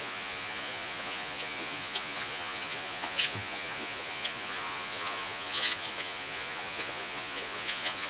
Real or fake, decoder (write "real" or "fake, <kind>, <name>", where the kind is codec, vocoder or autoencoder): fake, vocoder, Vocos